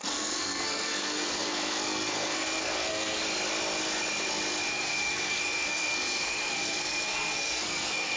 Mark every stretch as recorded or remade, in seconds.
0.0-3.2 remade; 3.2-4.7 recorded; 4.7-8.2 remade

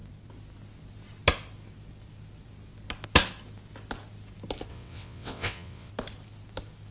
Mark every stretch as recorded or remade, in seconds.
0.0-4.7 recorded; 4.7-5.9 remade; 5.9-6.9 recorded